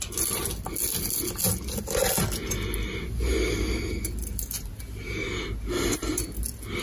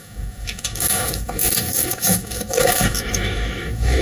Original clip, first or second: first